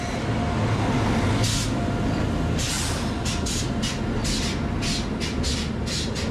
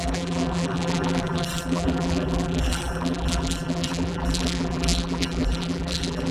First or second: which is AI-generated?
second